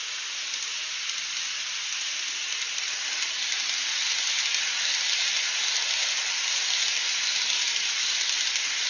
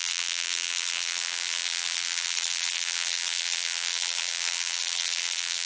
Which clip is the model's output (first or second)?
second